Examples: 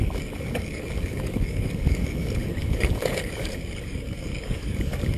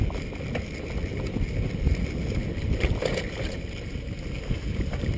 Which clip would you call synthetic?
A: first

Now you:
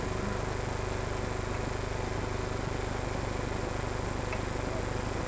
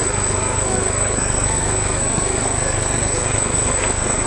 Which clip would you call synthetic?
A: second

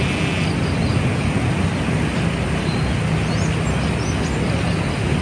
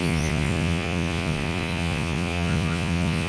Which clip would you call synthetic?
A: second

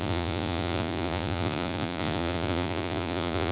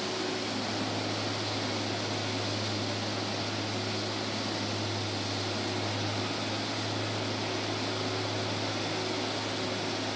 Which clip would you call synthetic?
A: first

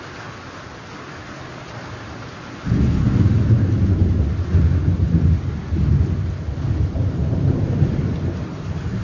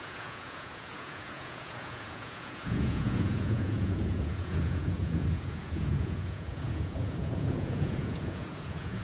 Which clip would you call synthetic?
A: second